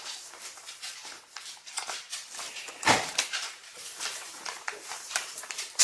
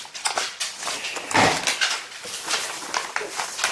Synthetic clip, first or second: first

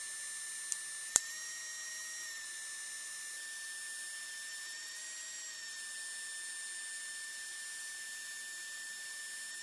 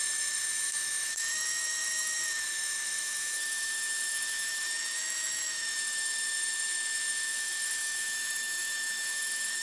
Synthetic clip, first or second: second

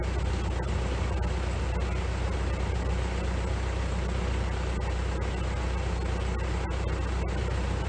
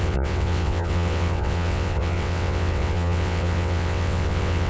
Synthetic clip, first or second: second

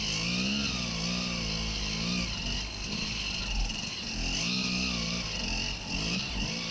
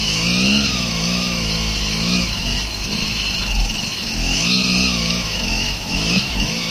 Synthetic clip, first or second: second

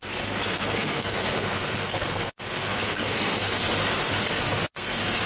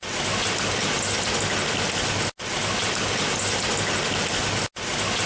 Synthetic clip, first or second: first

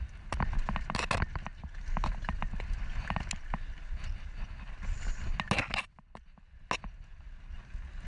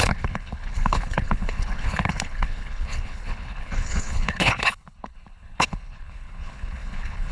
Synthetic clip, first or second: second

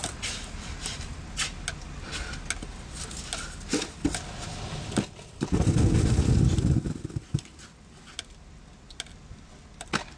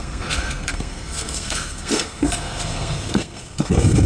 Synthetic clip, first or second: second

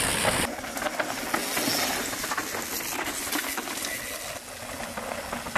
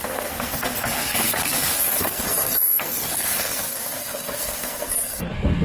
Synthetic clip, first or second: second